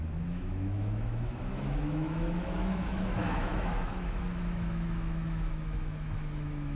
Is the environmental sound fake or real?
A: fake